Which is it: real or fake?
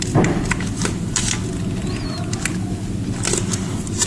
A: fake